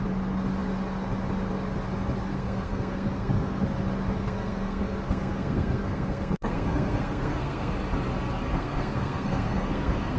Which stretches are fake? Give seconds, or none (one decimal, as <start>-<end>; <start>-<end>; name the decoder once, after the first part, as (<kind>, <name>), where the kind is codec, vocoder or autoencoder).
2.3-3.6 (codec, SNAC); 4.2-7.7; 8.5-10.2

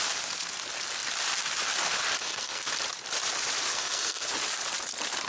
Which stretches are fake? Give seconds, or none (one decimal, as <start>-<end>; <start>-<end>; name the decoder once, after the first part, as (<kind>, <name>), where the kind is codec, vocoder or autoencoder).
2.2-2.7 (codec, SNAC); 3.7-4.3

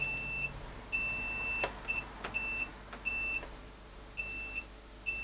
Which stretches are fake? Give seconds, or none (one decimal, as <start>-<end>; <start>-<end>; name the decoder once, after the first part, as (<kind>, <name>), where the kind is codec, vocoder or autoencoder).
none